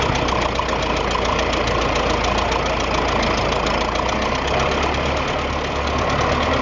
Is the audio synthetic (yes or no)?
no